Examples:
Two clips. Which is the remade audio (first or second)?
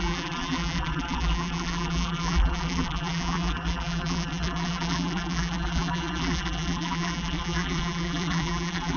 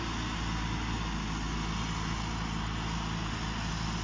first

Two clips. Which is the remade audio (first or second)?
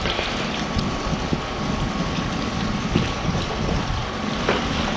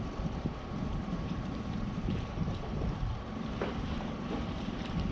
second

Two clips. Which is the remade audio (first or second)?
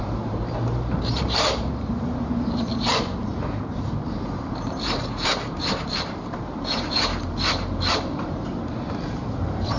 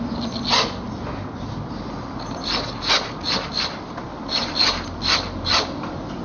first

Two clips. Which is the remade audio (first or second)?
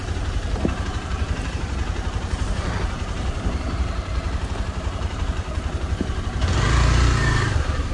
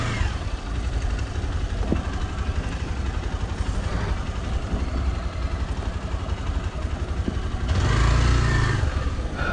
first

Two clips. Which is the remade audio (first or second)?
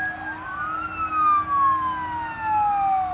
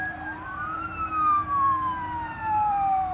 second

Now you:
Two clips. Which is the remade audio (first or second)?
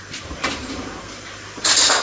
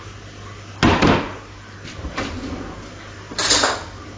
first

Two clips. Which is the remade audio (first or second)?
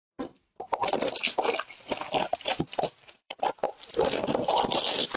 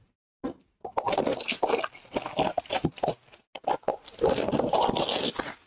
first